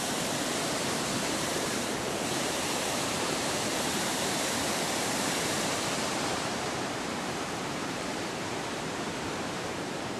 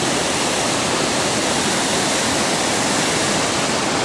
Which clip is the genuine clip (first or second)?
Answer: second